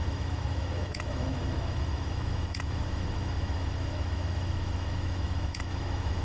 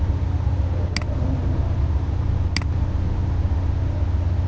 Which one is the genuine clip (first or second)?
second